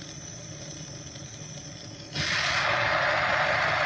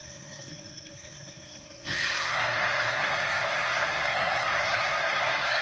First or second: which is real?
first